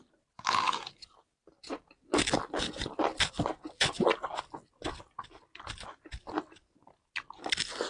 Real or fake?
real